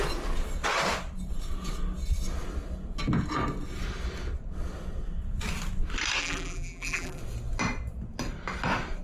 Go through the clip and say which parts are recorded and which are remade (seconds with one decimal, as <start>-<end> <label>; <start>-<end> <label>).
0.0-6.2 recorded; 6.2-7.2 remade; 7.2-9.0 recorded